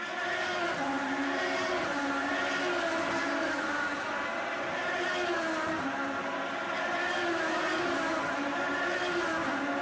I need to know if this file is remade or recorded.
recorded